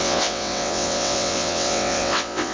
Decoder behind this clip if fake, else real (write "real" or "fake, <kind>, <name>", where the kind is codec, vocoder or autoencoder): fake, vocoder, WaveNeXt